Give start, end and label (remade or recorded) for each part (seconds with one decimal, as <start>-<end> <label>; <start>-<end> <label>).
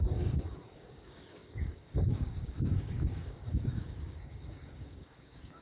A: 0.0-5.6 remade